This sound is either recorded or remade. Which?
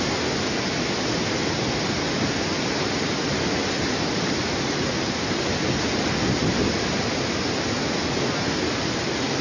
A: recorded